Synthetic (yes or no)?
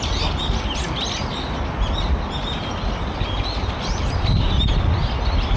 no